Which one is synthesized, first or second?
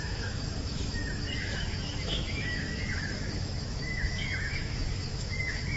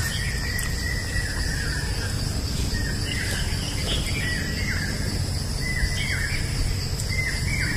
first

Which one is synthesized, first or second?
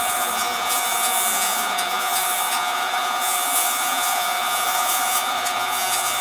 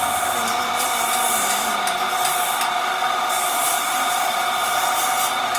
first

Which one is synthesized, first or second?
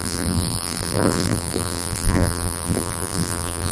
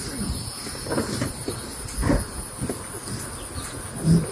first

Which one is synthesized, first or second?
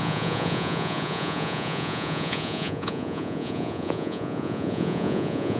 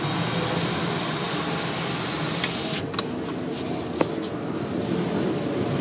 first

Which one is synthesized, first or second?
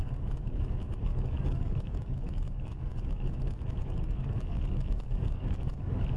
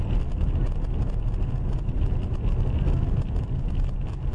first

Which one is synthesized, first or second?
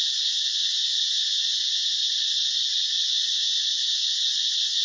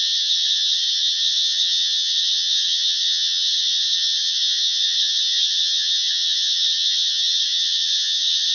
second